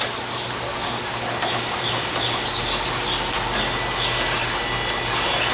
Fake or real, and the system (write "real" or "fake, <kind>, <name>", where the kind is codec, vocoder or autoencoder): real